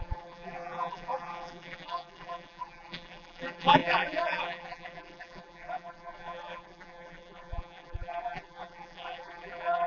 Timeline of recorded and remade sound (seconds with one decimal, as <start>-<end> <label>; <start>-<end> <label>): 0.0-9.9 remade